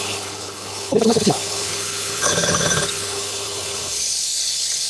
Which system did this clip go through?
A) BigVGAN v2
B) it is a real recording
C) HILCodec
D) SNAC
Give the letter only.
C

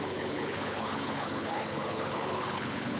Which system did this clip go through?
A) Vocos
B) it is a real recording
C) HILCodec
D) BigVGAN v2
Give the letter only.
C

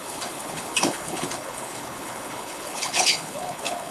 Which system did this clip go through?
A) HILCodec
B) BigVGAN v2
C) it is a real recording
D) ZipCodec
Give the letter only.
A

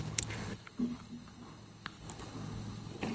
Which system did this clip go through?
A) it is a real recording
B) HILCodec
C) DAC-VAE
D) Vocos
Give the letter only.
B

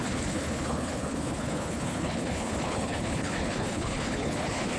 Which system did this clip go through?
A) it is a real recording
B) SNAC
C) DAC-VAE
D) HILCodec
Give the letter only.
D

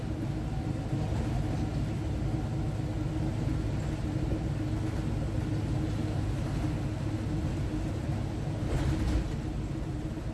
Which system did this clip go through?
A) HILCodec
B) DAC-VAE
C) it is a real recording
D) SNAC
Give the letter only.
C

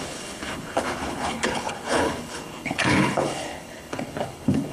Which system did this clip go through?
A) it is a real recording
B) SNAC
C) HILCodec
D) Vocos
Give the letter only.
C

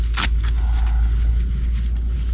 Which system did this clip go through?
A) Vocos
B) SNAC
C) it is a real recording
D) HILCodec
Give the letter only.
C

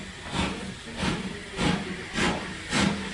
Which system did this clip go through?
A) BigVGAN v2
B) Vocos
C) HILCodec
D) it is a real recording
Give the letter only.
D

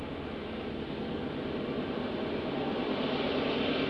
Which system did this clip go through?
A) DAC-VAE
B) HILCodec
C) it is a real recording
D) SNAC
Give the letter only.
C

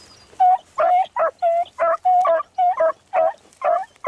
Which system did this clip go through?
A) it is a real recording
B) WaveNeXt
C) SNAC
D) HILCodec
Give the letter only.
A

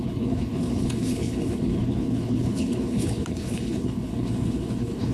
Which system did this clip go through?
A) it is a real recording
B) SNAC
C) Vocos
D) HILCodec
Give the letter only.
D